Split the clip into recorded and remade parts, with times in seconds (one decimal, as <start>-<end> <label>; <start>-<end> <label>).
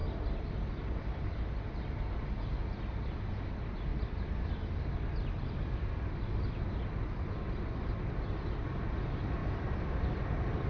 0.0-10.7 recorded